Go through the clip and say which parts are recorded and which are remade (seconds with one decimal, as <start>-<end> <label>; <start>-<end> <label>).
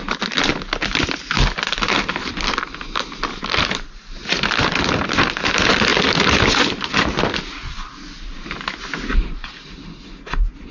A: 0.0-10.7 recorded